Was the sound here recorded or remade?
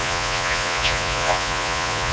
remade